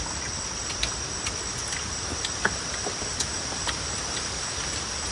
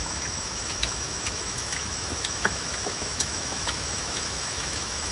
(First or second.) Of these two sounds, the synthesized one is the second